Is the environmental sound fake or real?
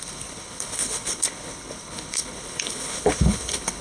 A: fake